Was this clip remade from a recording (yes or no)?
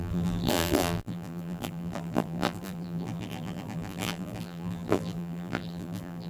yes